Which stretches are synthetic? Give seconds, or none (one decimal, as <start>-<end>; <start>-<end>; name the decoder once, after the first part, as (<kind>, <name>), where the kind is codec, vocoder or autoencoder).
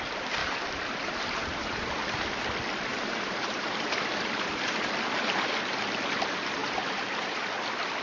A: 0.4-2.4 (vocoder, BigVGAN v2); 2.9-5.5; 6.6-7.4